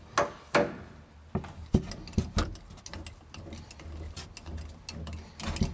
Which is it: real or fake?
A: real